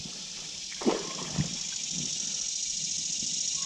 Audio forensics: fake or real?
real